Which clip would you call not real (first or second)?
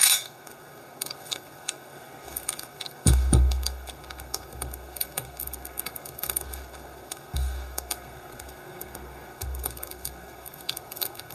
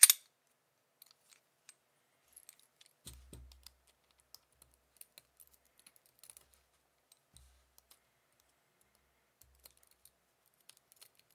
first